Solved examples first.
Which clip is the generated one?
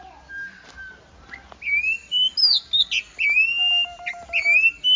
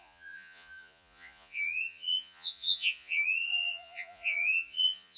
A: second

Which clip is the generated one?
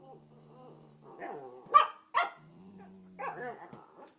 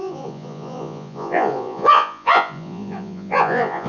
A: second